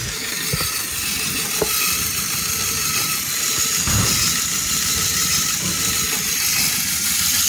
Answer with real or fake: real